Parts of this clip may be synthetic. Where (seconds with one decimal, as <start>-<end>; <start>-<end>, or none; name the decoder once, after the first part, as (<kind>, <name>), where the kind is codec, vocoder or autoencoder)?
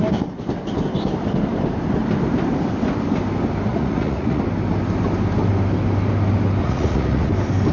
3.7-4.4 (vocoder, Vocos); 6.6-7.3